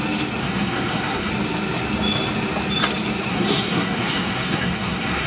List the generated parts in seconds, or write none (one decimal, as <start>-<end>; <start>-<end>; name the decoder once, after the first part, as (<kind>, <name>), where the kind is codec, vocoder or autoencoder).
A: 0.4-1.3 (codec, SNAC); 3.3-5.3